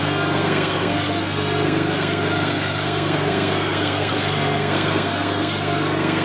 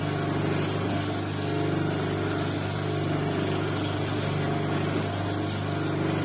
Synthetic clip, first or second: first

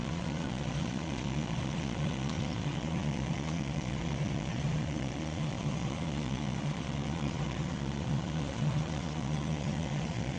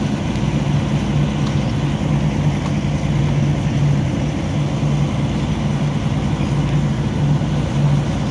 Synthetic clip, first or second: first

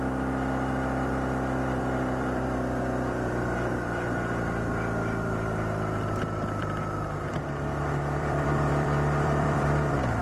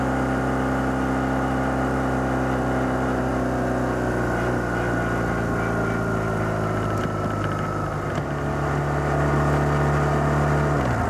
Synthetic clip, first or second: first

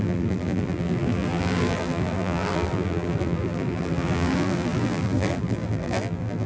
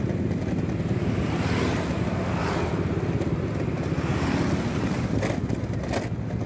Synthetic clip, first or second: first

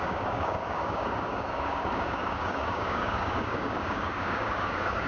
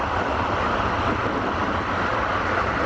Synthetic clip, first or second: first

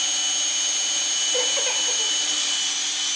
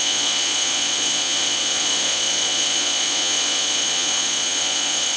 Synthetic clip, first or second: second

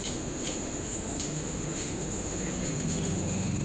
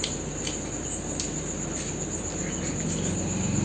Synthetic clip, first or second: first